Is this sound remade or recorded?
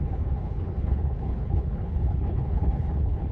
remade